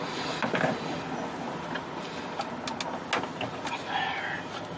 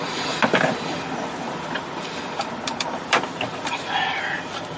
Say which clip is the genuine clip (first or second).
first